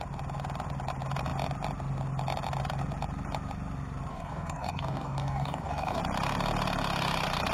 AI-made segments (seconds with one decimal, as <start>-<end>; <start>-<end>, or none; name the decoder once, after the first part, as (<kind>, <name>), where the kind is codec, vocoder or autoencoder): 4.1-6.0 (codec, DAC)